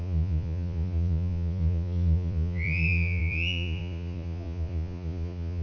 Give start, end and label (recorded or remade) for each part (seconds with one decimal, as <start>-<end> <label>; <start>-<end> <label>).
0.0-5.6 remade